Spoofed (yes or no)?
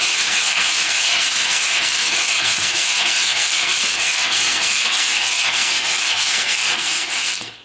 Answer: yes